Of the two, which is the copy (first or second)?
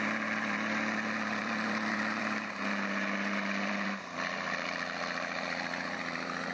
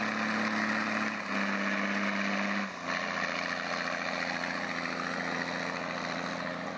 first